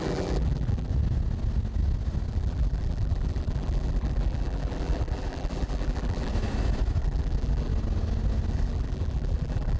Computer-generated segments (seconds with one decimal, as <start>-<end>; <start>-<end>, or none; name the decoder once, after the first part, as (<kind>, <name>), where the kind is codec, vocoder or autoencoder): 0.0-0.9 (vocoder, BigVGAN v2); 2.3-6.3; 7.0-7.7; 8.5-9.8